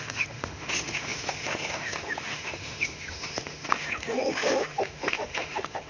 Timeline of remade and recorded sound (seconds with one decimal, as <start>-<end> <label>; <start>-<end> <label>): 0.0-5.9 remade